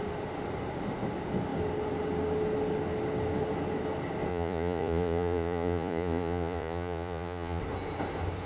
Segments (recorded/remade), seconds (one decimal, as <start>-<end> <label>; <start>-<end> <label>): 0.0-4.3 recorded; 4.3-7.6 remade; 7.6-8.5 recorded